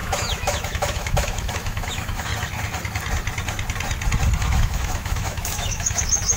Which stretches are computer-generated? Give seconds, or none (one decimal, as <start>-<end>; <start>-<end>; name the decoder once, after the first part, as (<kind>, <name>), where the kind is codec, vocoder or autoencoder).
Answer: 0.0-2.3 (autoencoder, DAC-VAE); 4.4-6.4